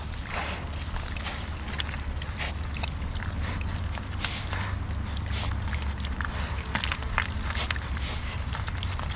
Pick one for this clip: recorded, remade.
recorded